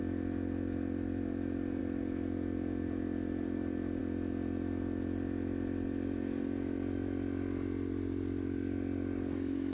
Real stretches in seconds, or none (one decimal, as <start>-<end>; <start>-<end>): 0.0-9.7